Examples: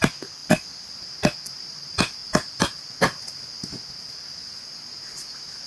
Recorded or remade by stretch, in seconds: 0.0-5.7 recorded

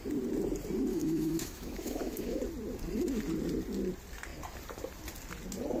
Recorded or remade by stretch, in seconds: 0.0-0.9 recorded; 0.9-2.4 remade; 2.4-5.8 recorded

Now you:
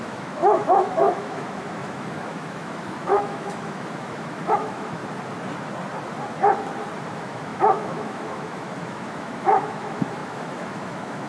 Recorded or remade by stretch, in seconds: 0.0-5.0 remade; 5.0-7.1 recorded; 7.1-11.3 remade

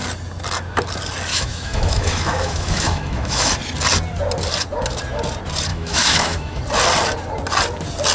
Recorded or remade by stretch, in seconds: 0.0-1.3 recorded; 1.3-3.5 remade; 3.5-5.7 recorded; 5.7-6.6 remade; 6.6-8.1 recorded